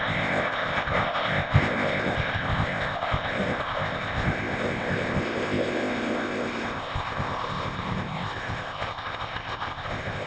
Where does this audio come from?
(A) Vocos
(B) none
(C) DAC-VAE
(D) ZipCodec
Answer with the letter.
D